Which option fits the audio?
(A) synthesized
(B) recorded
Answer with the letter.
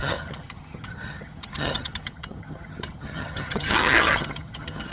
A